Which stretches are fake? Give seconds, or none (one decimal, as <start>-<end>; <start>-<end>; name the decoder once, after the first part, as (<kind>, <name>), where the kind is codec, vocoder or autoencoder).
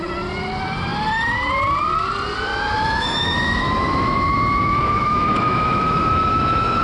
2.5-6.8 (autoencoder, DAC-VAE)